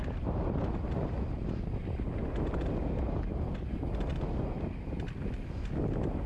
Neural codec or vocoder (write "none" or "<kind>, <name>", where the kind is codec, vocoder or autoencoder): none